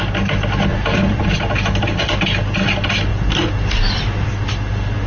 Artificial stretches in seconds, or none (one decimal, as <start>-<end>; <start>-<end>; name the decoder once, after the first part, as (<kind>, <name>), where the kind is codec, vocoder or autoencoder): none